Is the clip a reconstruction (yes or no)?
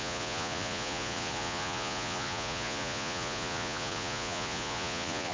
yes